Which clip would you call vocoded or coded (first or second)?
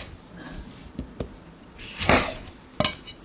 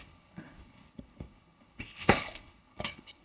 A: second